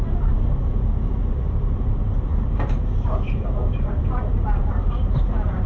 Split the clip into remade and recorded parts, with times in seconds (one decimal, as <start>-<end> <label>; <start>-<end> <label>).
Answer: 0.0-5.7 remade